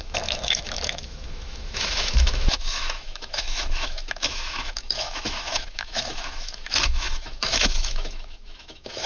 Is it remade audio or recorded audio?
remade